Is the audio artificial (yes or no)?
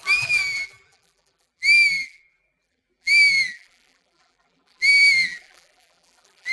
yes